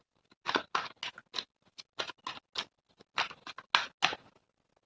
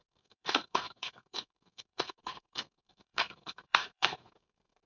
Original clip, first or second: first